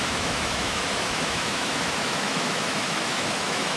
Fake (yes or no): yes